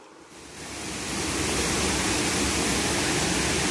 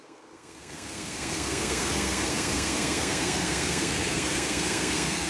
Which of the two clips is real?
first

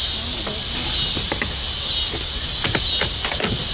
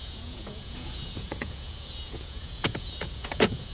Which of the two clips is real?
first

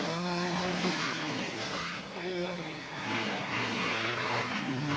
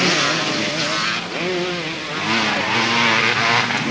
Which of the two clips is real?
second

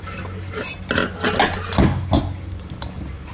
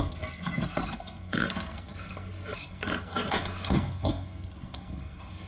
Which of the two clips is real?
first